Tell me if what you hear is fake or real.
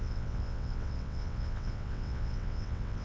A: fake